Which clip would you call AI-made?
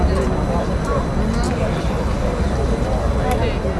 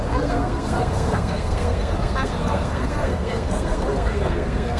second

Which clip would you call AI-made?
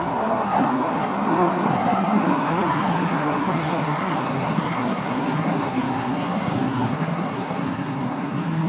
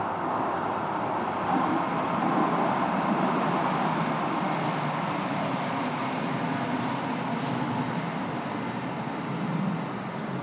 first